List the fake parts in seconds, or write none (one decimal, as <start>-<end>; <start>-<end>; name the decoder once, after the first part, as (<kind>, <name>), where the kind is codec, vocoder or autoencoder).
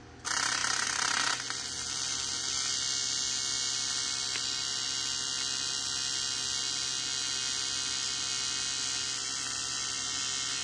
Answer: none